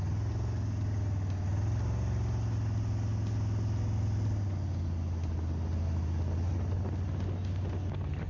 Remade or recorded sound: recorded